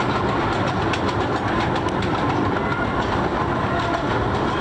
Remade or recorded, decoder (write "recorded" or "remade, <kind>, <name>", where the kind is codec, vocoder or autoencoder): recorded